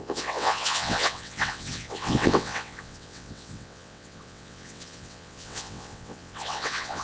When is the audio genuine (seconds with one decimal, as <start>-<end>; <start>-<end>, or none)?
none